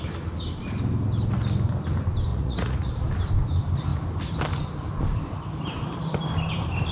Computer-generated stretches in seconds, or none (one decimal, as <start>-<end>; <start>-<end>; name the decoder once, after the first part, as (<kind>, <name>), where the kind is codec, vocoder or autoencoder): 2.3-2.9 (vocoder, Vocos)